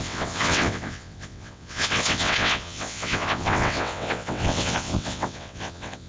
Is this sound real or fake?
fake